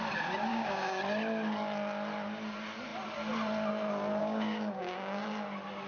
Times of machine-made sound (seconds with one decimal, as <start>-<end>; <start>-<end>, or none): 0.5-1.0; 4.2-5.2